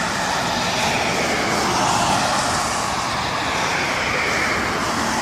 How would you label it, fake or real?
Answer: real